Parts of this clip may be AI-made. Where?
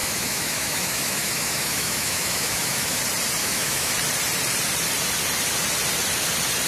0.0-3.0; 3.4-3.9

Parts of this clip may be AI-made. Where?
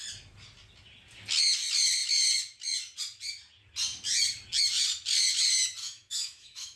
5.8-6.8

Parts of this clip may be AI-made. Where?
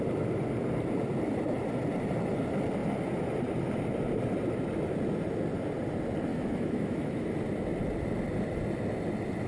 6.3-7.3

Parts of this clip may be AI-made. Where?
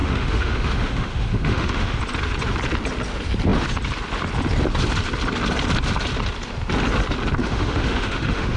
0.0-2.0; 7.4-8.6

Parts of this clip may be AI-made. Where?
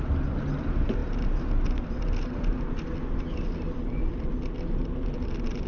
none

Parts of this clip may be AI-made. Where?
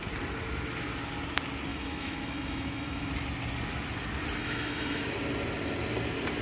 1.7-3.1; 4.4-5.0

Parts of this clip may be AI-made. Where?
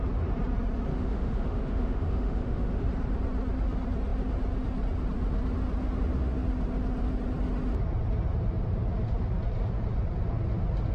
0.9-2.8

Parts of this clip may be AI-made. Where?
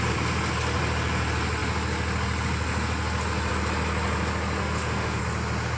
4.6-5.2